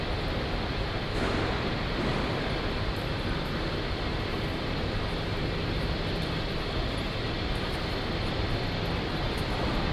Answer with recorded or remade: recorded